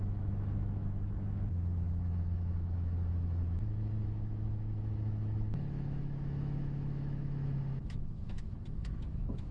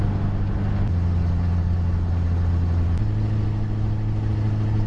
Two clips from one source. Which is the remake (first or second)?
first